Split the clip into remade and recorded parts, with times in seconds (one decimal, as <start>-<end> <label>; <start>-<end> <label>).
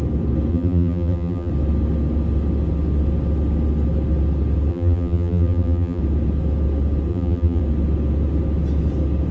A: 0.0-0.5 recorded; 0.5-1.5 remade; 1.5-4.7 recorded; 4.7-6.0 remade; 6.0-7.1 recorded; 7.1-7.6 remade; 7.6-9.3 recorded